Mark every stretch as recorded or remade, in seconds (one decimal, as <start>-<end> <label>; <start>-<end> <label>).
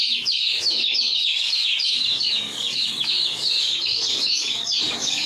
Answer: 0.0-5.3 remade